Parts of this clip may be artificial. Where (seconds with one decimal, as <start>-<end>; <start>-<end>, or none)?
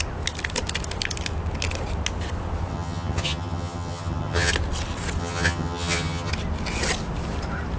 2.7-4.5; 5.2-6.3